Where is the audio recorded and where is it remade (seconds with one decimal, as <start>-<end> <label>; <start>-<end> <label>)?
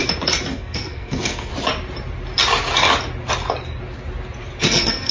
0.0-0.5 recorded; 0.5-1.5 remade; 1.5-4.6 recorded; 4.6-5.1 remade